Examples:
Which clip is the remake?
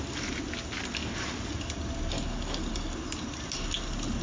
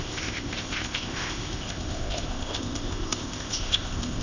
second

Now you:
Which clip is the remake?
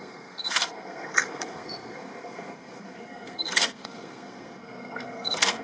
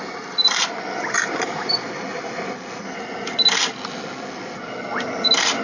first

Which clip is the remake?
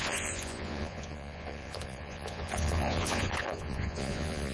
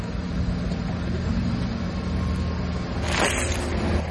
first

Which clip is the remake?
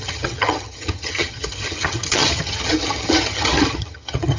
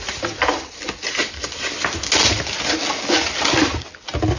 first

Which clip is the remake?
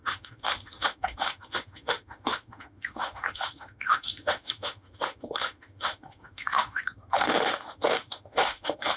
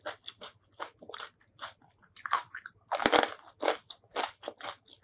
first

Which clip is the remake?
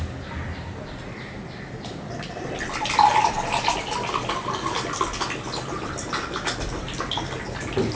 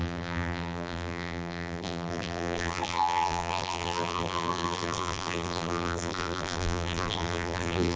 second